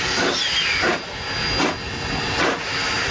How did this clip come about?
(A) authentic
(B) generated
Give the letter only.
A